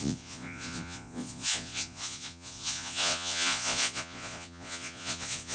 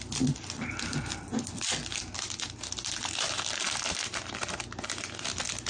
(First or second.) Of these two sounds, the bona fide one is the second